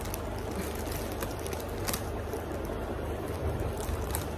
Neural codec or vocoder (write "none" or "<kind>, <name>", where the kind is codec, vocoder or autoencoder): none